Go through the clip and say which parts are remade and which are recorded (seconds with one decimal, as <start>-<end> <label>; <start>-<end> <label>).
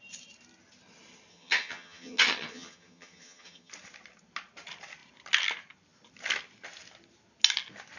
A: 0.0-1.3 recorded; 1.3-3.7 remade; 3.7-8.0 recorded